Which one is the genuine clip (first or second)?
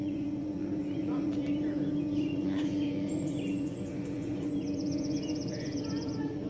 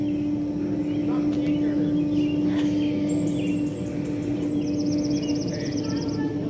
second